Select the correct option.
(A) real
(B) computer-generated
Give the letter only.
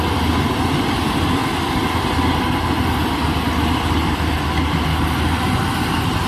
A